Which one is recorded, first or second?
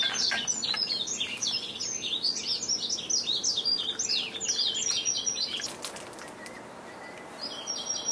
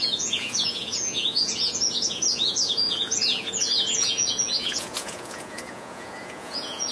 first